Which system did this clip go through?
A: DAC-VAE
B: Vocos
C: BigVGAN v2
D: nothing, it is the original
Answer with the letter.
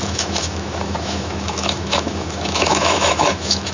A